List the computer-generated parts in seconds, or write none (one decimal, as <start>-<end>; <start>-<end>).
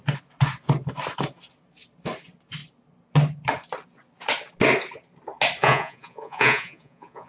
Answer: 5.6-7.3